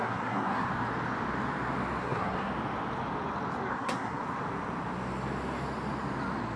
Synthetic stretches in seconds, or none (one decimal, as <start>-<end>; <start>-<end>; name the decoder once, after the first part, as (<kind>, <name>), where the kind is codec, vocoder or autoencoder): 0.0-0.7 (codec, SNAC); 2.0-2.5; 3.7-4.2